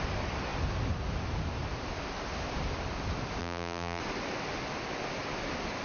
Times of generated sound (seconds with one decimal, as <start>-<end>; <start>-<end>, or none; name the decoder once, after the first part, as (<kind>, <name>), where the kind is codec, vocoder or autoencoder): 3.4-4.0 (vocoder, BigVGAN v2)